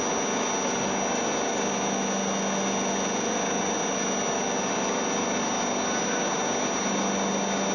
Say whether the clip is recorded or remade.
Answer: recorded